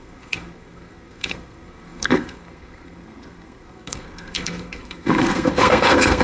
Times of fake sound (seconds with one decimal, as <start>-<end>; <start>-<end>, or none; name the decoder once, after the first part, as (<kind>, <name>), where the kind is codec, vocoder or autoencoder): 0.0-6.2 (codec, SNAC)